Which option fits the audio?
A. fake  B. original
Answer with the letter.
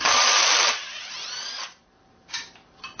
B